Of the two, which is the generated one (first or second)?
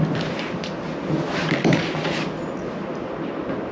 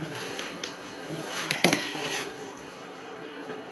second